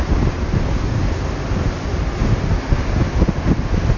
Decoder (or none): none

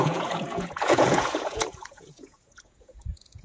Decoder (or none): vocoder, Vocos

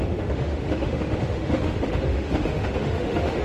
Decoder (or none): autoencoder, DAC-VAE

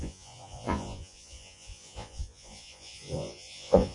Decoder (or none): vocoder, Vocos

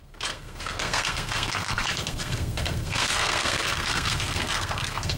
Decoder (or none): codec, SNAC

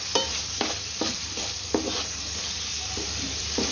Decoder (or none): vocoder, BigVGAN v2